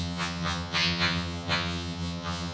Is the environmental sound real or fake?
fake